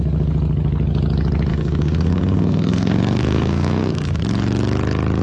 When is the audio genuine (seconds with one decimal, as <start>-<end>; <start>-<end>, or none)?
0.0-1.5; 4.1-5.2